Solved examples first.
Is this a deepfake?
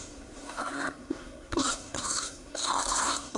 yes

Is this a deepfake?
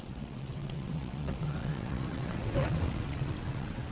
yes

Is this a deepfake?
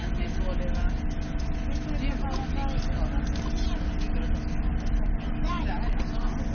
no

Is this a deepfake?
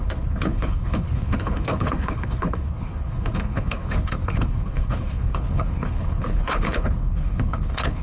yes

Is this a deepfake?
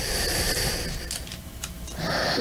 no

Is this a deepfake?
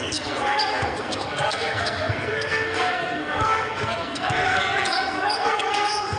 yes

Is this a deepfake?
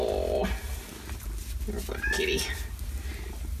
no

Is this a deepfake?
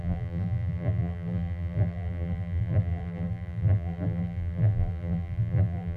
yes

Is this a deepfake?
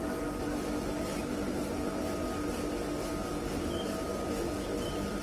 no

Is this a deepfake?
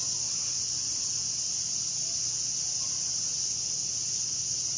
no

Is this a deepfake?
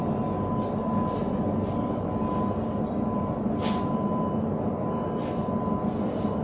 no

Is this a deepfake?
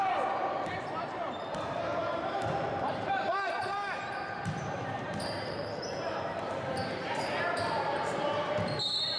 yes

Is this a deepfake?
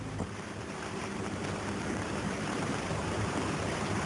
yes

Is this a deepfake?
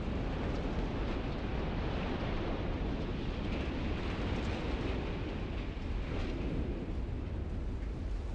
no